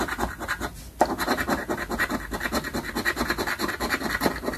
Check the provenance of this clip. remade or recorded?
recorded